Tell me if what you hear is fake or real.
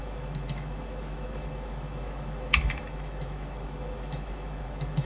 fake